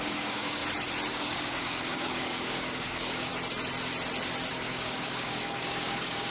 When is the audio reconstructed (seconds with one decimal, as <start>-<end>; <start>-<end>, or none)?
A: 0.0-0.6; 1.1-3.3; 4.5-6.3